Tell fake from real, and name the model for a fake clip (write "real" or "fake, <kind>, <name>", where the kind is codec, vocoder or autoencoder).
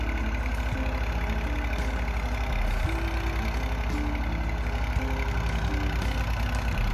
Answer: real